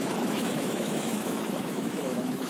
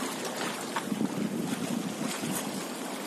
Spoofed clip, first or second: first